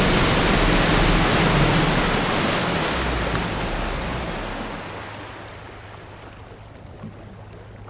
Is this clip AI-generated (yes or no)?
no